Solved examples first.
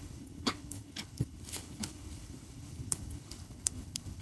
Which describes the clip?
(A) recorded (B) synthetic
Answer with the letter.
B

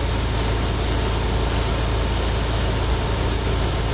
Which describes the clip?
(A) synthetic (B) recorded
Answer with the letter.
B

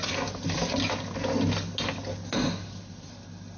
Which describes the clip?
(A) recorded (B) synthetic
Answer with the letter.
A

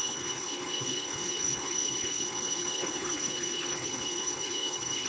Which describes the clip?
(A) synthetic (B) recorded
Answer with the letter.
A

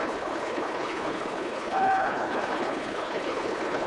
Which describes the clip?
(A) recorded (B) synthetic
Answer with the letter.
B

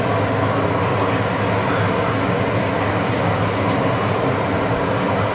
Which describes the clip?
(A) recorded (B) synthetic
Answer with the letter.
A